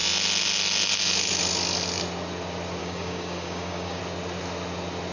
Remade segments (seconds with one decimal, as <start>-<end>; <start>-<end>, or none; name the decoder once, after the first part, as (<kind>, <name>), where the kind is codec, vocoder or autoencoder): 2.8-4.0 (codec, DAC)